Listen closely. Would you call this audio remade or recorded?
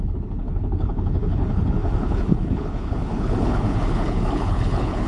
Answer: remade